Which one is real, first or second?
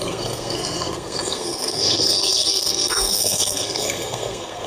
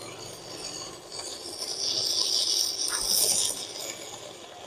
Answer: second